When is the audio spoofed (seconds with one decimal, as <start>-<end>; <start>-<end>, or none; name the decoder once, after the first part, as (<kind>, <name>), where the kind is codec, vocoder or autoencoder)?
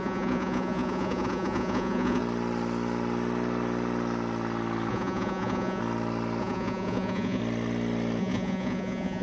0.0-2.2 (vocoder, Vocos); 4.9-5.8; 6.4-7.4; 8.2-9.2